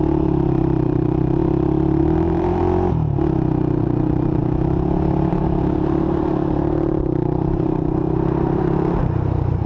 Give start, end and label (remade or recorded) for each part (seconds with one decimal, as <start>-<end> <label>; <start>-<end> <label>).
0.0-1.4 remade; 1.4-2.0 recorded; 2.0-2.6 remade; 2.6-3.8 recorded; 3.8-4.4 remade; 4.4-5.3 recorded; 5.3-9.7 remade